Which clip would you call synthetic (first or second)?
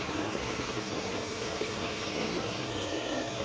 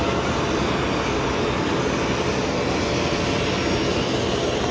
first